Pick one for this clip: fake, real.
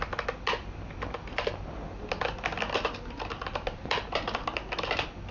real